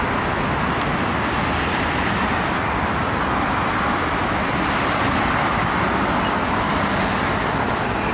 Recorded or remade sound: recorded